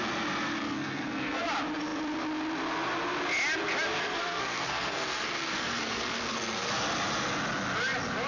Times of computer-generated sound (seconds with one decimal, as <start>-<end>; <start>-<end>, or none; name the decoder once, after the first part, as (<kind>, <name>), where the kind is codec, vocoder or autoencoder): 0.6-1.4 (codec, SNAC); 4.0-6.7